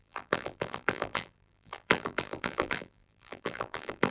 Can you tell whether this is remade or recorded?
remade